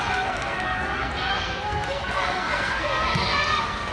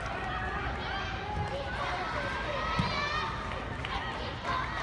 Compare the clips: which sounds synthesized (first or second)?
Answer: first